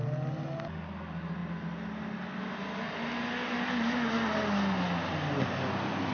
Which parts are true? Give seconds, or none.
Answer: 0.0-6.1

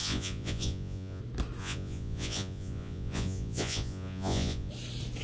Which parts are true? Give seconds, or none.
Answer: 1.2-1.6; 4.7-5.2

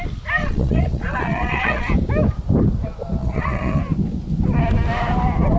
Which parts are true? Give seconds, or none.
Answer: 0.0-0.4; 1.9-3.2; 3.8-5.6

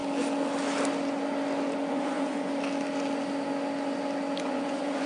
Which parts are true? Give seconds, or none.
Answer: 0.0-1.9; 2.5-4.4

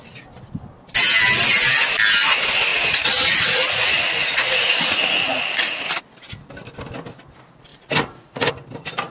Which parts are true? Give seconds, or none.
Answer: 0.0-2.7; 5.9-7.7; 8.5-9.1